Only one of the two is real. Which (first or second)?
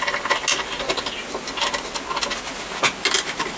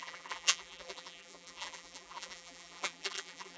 first